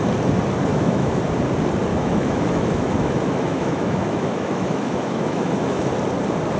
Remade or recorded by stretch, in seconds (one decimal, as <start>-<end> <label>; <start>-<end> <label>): 0.0-0.7 recorded; 0.7-1.2 remade; 1.2-1.9 recorded; 1.9-5.9 remade; 5.9-6.6 recorded